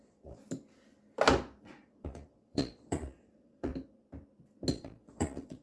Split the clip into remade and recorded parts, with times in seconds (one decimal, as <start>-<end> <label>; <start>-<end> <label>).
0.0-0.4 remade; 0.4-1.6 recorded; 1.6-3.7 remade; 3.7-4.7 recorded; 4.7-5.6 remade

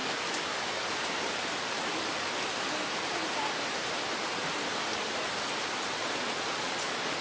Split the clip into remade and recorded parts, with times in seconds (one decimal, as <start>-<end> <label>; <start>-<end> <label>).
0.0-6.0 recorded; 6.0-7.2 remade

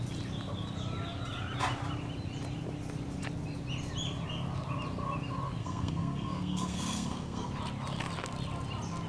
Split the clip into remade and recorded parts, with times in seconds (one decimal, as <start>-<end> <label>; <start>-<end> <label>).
0.0-5.6 recorded; 5.6-7.5 remade; 7.5-9.1 recorded

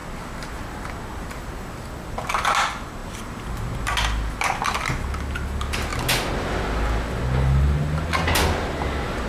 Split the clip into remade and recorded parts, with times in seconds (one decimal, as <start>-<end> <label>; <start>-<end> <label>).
0.0-9.3 recorded

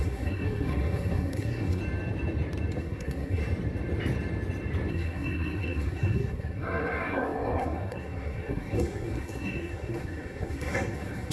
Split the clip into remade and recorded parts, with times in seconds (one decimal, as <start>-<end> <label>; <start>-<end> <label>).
0.0-1.8 remade; 1.8-2.8 recorded; 2.8-3.4 remade; 3.4-4.9 recorded; 4.9-11.3 remade

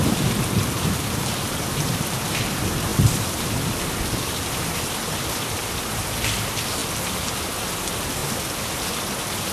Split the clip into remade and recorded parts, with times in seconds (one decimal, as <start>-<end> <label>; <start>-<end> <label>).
0.0-6.8 remade; 6.8-7.4 recorded; 7.4-9.5 remade